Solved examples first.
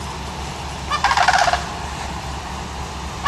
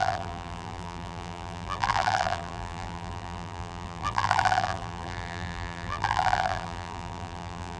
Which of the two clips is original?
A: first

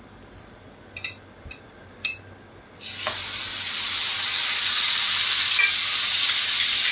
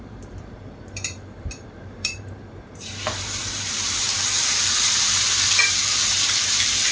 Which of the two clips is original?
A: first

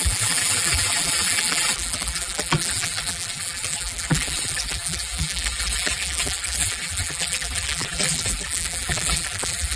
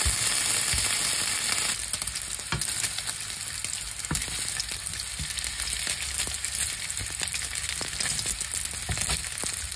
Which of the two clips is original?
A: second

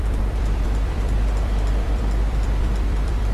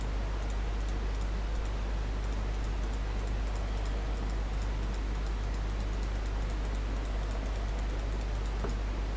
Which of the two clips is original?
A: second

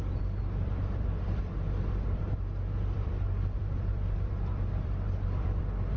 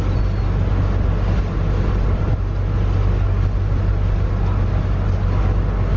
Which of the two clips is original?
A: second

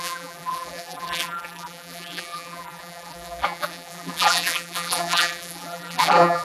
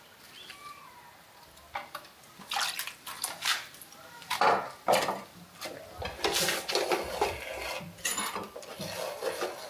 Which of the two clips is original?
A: second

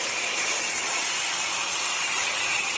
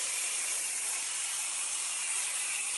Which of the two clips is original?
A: first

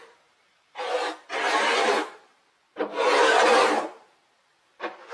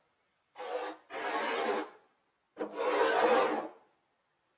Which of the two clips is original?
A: second